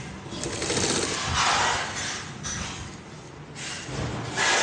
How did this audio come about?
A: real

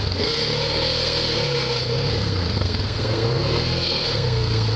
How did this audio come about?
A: fake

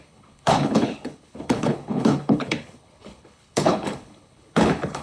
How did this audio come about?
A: fake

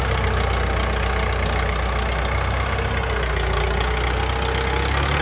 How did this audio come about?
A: real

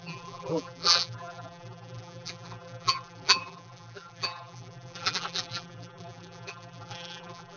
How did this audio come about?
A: fake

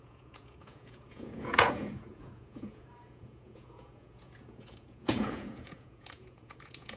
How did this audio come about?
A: fake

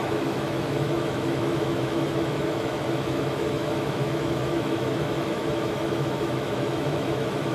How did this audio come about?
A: fake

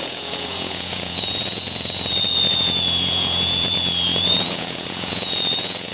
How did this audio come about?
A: fake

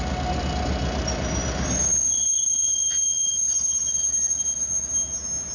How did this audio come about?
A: real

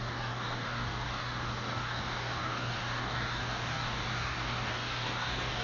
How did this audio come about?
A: fake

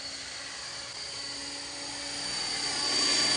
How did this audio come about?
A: real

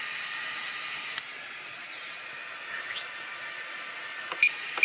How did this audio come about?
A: real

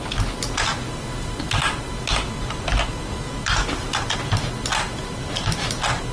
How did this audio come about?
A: real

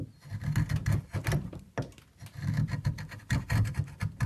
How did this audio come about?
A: real